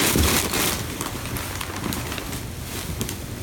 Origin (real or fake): real